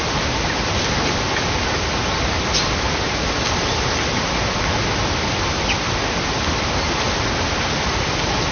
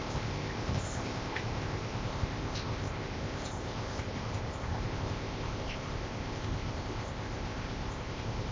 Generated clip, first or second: second